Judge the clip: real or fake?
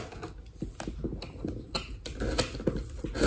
real